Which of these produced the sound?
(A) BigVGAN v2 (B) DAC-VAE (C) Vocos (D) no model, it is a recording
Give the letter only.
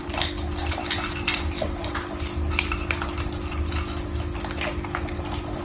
D